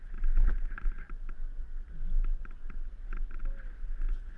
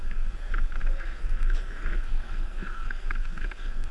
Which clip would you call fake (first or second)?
second